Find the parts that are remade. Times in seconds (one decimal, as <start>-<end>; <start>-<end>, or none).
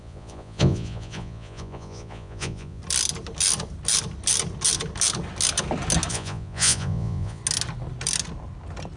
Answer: 0.0-2.8; 6.1-7.4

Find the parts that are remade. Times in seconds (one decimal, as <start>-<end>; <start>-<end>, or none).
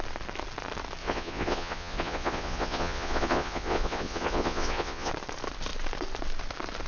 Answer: 1.0-5.1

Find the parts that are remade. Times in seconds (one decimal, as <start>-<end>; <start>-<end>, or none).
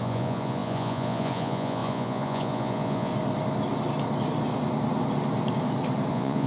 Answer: 0.0-3.1; 6.1-6.5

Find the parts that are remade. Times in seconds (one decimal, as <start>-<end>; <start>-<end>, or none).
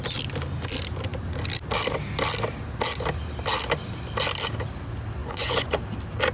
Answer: 5.2-5.8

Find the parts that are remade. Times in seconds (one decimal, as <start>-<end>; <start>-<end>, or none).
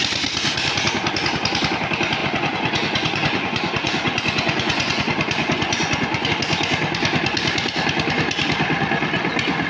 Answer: 2.2-6.3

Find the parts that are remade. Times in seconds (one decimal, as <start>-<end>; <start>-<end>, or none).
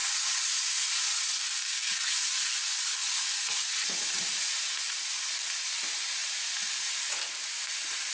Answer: 0.0-1.3; 3.0-5.2